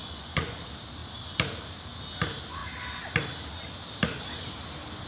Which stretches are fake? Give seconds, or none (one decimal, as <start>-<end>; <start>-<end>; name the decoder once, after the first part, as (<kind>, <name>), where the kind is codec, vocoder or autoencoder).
0.0-0.6 (vocoder, Vocos)